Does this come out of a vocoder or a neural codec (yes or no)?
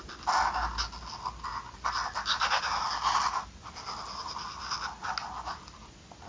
no